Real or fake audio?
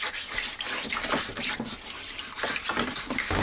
real